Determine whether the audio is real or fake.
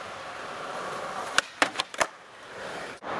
fake